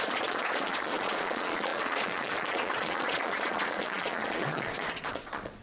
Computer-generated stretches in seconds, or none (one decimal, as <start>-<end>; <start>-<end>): 0.0-5.6